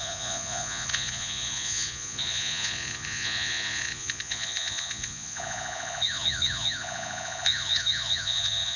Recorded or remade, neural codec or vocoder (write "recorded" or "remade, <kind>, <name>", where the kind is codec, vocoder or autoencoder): remade, vocoder, Vocos